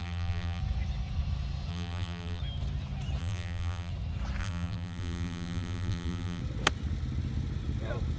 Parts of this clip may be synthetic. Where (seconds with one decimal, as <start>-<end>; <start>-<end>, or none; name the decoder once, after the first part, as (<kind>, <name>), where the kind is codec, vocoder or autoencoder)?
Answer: 0.0-0.6 (vocoder, BigVGAN v2); 1.7-2.4; 3.2-3.9; 4.4-6.4